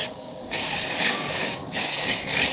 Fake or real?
fake